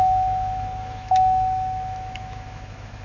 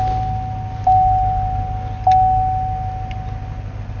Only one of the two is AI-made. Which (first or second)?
first